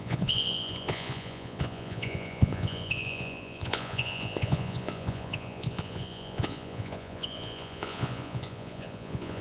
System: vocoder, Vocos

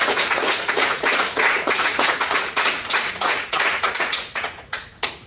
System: vocoder, Vocos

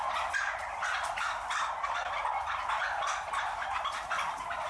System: none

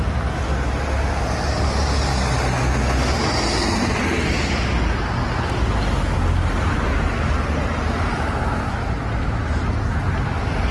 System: none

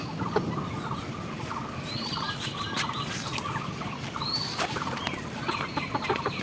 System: none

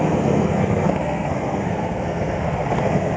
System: codec, SNAC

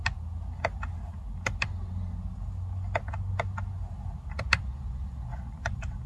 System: none